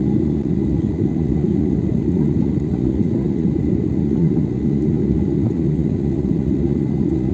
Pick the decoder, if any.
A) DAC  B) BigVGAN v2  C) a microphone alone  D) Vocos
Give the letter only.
D